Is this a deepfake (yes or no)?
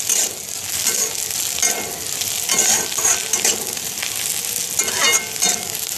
no